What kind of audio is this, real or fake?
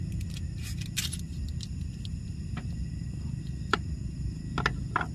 real